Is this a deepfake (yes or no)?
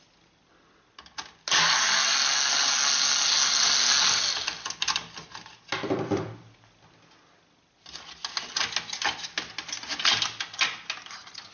no